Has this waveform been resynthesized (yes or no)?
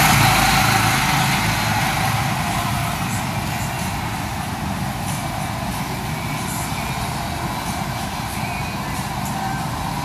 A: no